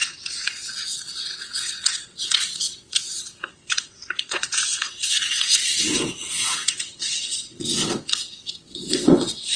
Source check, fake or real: fake